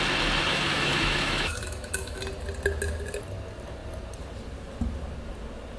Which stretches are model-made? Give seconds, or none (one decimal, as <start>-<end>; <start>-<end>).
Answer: 0.5-2.2